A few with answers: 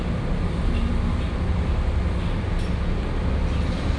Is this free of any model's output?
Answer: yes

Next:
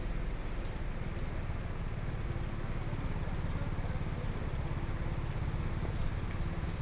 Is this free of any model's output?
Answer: yes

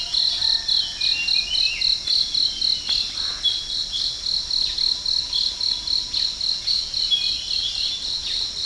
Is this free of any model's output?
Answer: yes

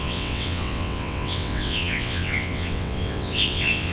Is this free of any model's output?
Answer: no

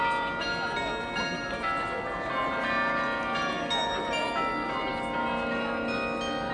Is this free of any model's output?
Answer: yes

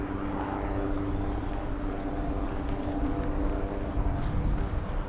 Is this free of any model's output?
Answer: yes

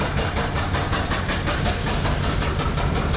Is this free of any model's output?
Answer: yes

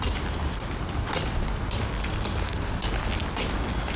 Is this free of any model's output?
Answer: yes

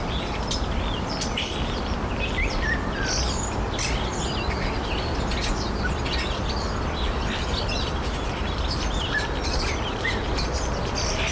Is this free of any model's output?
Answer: yes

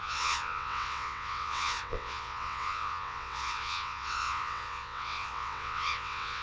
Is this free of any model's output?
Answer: no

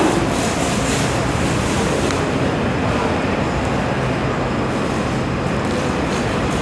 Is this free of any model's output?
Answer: yes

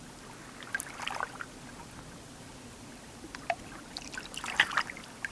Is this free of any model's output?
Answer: yes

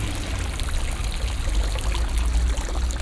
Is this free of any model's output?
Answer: yes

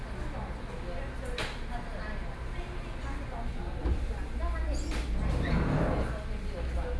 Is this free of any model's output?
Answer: yes